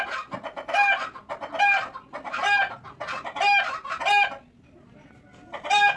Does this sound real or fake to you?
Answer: real